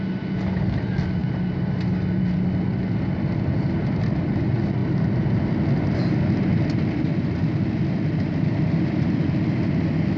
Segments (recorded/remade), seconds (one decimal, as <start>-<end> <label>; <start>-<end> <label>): 0.0-10.2 recorded